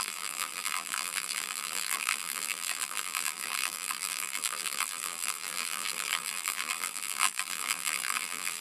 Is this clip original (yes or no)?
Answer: no